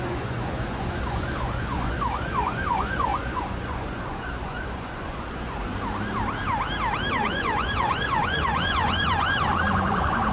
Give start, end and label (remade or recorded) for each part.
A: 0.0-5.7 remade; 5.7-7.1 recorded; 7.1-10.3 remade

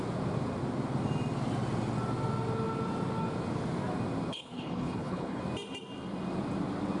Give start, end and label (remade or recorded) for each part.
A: 0.0-4.3 recorded; 4.3-5.4 remade; 5.4-7.0 recorded

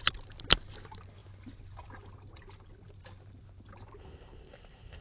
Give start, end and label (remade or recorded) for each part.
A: 0.0-4.0 recorded; 4.0-5.0 remade